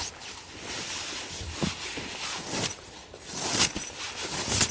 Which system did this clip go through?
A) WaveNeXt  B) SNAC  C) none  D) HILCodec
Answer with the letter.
C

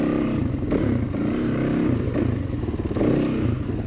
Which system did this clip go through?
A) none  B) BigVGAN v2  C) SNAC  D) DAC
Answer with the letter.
A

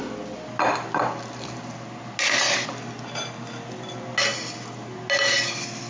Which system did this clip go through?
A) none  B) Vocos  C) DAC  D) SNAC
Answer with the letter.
A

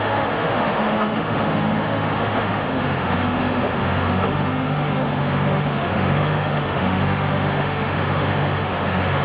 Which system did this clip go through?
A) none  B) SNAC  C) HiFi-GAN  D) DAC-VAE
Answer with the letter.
D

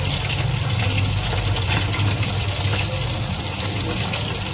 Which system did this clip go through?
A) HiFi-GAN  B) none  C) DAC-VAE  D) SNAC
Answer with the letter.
B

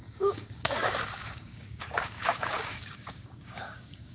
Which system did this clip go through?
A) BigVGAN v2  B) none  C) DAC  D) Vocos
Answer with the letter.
C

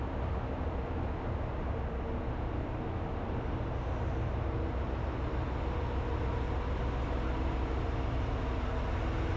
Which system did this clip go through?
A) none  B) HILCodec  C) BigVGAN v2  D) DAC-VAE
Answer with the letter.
A